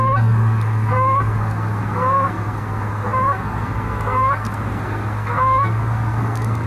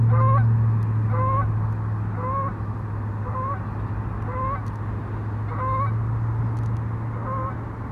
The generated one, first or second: first